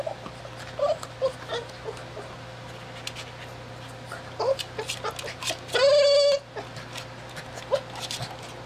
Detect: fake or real real